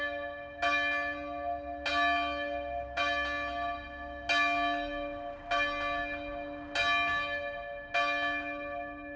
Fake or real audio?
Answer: real